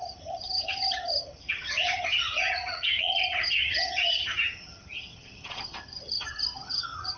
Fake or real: fake